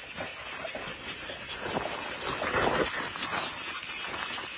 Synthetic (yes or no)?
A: no